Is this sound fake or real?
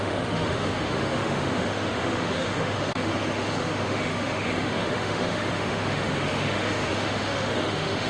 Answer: fake